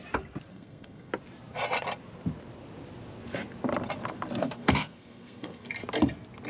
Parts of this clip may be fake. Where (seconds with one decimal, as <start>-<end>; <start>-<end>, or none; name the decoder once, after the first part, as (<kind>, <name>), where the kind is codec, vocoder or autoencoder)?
0.5-1.1 (codec, SNAC); 4.4-5.7